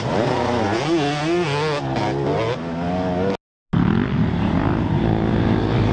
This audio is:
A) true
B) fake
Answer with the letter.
A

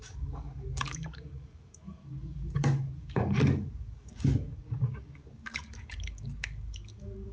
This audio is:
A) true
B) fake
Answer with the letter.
B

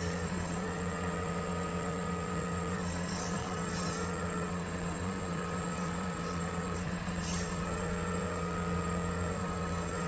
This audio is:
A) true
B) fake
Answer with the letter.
B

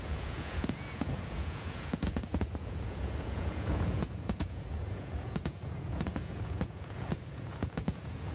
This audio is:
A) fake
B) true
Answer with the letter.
A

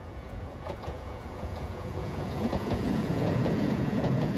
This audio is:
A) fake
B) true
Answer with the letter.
A